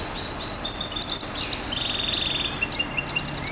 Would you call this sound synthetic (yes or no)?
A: no